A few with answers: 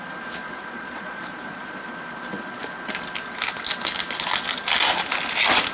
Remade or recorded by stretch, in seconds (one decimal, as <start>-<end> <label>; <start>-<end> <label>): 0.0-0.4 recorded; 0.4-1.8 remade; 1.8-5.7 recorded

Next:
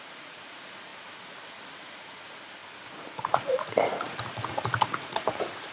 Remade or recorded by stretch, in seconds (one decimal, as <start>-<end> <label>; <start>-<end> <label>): 0.0-0.9 remade; 0.9-1.7 recorded; 1.7-2.6 remade; 2.6-3.2 recorded; 3.2-5.7 remade

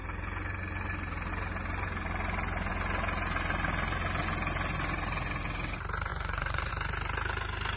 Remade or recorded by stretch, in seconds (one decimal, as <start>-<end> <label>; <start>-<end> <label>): 0.0-6.1 recorded; 6.1-6.7 remade; 6.7-7.8 recorded

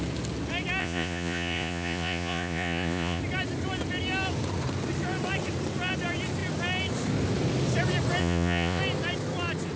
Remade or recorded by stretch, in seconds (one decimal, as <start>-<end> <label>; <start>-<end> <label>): 0.0-0.8 recorded; 0.8-3.2 remade; 3.2-8.2 recorded; 8.2-8.8 remade; 8.8-9.8 recorded

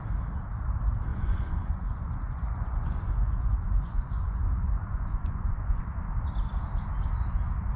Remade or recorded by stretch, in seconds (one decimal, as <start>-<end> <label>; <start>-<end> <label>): 0.0-1.1 recorded; 1.1-5.8 remade; 5.8-7.8 recorded